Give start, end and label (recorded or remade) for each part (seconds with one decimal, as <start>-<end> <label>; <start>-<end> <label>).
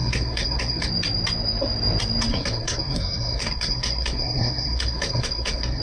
0.0-0.9 remade; 0.9-2.3 recorded; 2.3-5.8 remade